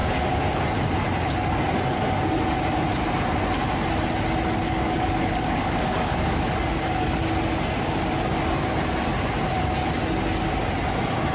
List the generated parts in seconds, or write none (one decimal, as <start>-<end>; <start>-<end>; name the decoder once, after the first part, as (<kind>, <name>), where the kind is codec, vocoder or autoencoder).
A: 4.5-7.2 (codec, DAC)